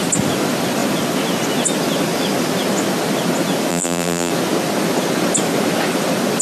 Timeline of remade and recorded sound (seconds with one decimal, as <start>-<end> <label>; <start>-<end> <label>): 0.0-3.7 recorded; 3.7-4.3 remade; 4.3-6.4 recorded